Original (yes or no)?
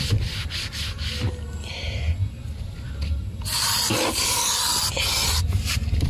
yes